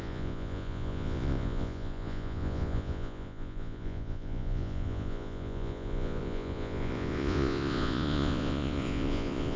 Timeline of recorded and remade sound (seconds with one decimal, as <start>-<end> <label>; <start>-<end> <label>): 0.0-9.6 remade